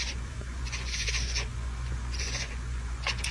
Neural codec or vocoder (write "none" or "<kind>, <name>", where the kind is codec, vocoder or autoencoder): vocoder, Vocos